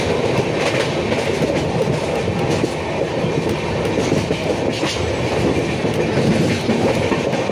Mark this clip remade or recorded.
recorded